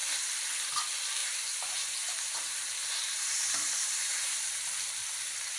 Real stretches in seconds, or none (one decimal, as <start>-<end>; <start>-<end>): 0.0-1.2; 4.6-5.6